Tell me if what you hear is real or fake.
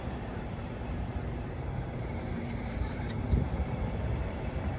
fake